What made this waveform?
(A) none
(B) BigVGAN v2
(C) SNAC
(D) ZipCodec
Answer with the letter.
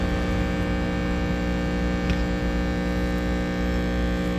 A